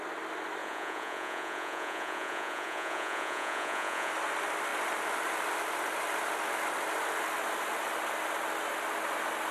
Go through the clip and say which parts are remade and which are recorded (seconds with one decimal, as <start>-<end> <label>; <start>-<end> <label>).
0.0-0.6 recorded; 0.6-4.1 remade; 4.1-9.5 recorded

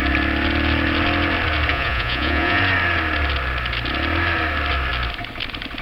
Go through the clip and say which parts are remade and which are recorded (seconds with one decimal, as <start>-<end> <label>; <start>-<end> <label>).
0.0-1.7 recorded; 1.7-2.6 remade; 2.6-5.8 recorded

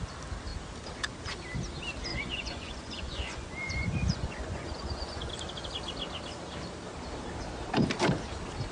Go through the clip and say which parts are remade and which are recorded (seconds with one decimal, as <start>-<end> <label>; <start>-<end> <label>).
0.0-2.1 recorded; 2.1-5.3 remade; 5.3-8.7 recorded

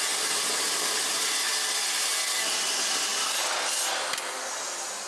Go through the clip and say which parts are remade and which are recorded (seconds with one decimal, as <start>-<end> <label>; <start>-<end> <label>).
0.0-5.1 recorded

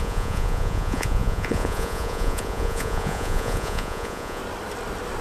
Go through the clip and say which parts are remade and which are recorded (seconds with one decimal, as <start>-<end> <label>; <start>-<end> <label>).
0.0-4.4 remade; 4.4-5.2 recorded

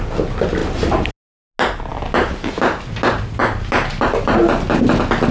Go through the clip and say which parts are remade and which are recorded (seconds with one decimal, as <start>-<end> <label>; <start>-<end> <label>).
0.0-5.3 recorded

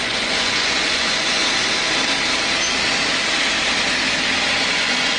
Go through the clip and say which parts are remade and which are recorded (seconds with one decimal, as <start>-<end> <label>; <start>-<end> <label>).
0.0-1.4 remade; 1.4-4.5 recorded; 4.5-5.2 remade